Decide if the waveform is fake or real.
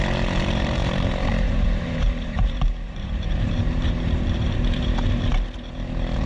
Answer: fake